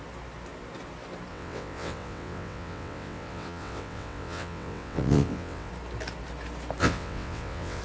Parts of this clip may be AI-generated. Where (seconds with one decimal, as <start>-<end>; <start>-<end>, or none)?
1.3-5.7; 6.8-7.8